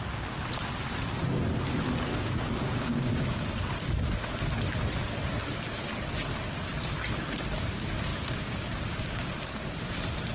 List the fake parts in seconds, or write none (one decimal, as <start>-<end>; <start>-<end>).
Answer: 2.1-3.7; 8.1-9.3